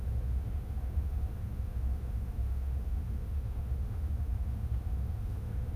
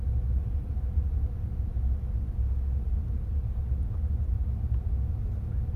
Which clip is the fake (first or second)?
first